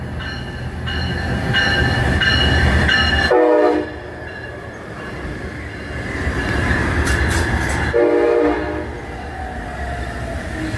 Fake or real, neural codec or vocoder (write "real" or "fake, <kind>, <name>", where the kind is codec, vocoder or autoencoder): real